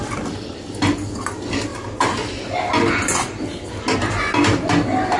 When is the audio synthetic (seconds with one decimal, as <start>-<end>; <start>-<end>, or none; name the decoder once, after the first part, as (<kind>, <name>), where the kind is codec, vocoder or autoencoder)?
none